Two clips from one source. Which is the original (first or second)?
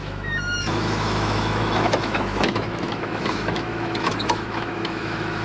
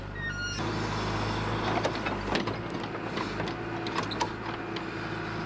second